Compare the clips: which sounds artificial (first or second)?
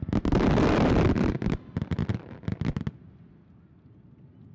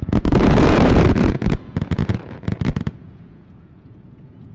second